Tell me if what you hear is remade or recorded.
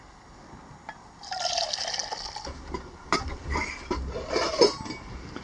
recorded